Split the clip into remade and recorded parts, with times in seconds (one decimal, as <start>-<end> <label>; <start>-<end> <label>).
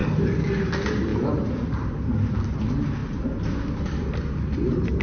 0.0-1.1 recorded; 1.1-2.1 remade; 2.1-5.0 recorded